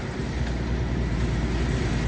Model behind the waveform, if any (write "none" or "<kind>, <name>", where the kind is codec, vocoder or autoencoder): vocoder, BigVGAN v2